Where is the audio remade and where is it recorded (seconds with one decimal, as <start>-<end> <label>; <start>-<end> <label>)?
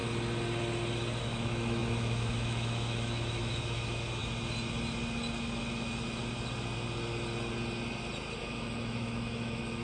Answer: 0.0-1.2 recorded; 1.2-4.2 remade; 4.2-8.4 recorded; 8.4-9.8 remade